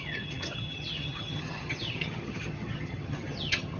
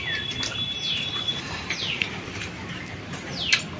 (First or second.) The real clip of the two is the second